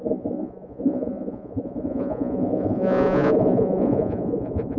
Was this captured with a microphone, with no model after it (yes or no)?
no